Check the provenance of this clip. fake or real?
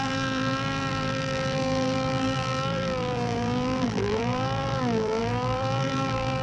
fake